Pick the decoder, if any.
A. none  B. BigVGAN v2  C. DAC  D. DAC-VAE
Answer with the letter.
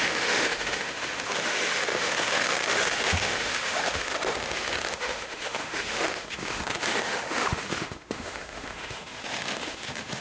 D